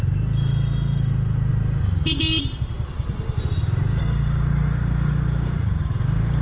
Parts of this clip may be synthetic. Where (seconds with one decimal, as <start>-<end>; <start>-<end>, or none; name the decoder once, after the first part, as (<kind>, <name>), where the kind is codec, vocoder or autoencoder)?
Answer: 4.0-6.4 (codec, DAC)